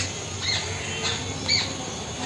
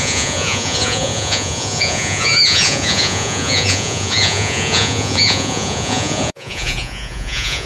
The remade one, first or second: second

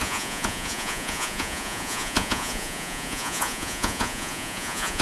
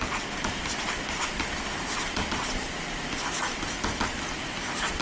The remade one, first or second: first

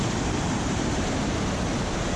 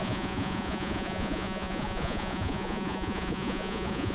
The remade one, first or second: second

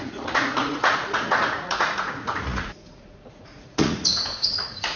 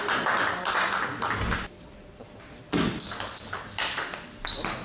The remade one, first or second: first